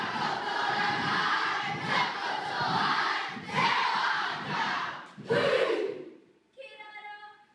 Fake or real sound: fake